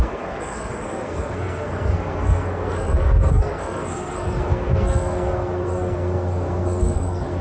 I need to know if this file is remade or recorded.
remade